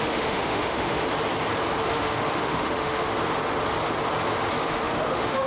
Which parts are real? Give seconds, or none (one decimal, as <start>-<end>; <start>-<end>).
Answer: 1.0-1.8; 3.1-4.6